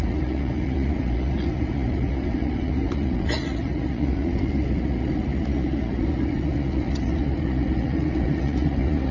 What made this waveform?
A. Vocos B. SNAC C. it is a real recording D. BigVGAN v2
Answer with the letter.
A